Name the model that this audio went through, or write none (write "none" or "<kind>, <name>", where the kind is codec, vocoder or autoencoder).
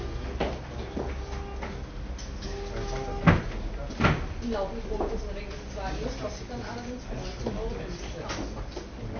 none